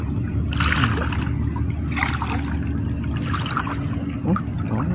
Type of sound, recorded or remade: recorded